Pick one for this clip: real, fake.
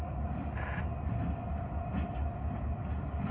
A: real